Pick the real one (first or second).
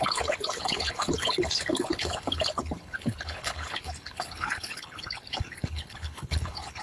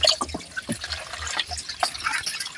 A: second